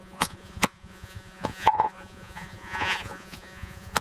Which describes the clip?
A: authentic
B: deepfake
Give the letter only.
B